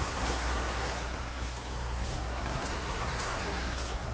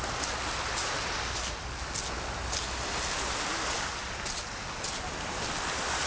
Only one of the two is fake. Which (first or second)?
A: first